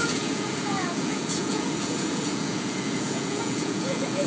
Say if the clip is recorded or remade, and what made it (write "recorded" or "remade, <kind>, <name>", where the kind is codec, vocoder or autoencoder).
remade, vocoder, Vocos